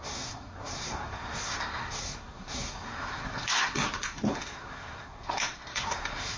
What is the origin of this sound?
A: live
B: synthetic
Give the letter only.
B